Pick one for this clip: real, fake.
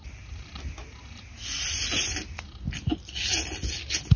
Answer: real